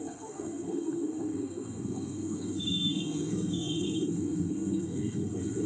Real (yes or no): no